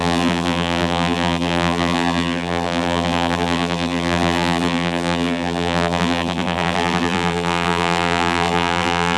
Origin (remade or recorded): remade